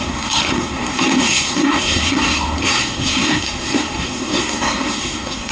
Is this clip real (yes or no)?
no